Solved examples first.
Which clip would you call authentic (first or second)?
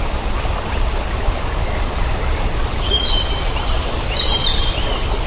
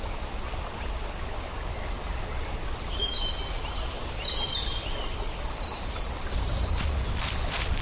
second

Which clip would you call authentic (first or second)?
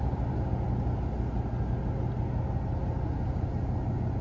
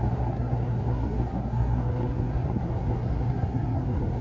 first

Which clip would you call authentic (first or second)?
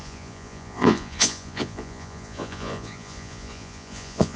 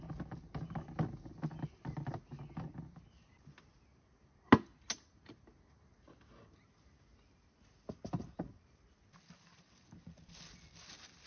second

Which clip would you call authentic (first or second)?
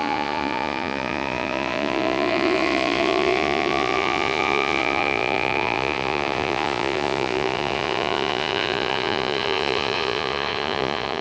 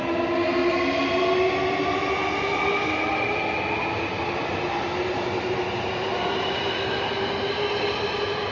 second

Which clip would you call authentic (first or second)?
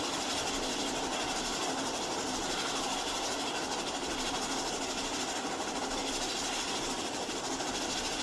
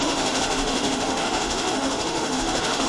first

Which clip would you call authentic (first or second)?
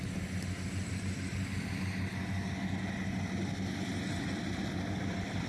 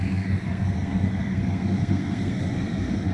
first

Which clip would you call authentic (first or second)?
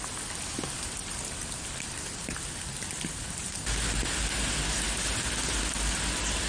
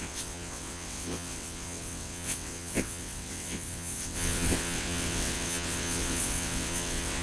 first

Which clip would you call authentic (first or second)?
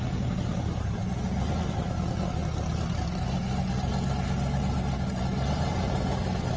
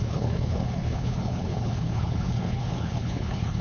first